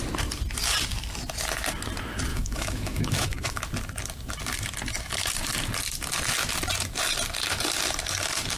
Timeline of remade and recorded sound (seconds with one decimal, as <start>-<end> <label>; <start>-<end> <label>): 0.0-2.3 recorded; 2.3-3.6 remade; 3.6-8.6 recorded